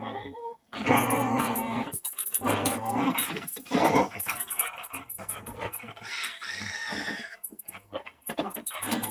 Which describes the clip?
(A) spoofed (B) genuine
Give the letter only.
A